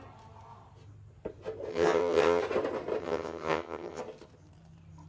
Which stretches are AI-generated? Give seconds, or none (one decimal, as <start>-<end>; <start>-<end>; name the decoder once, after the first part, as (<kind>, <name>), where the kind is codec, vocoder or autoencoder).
1.7-2.4 (vocoder, HiFi-GAN); 3.0-4.0